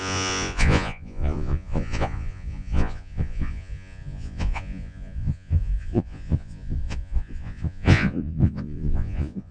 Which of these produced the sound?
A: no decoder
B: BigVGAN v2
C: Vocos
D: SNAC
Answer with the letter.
C